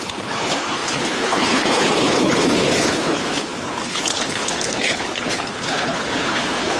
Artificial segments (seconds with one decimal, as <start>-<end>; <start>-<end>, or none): 0.0-6.8